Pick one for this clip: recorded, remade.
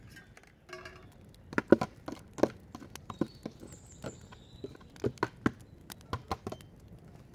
recorded